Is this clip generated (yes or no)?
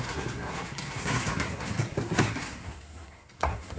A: yes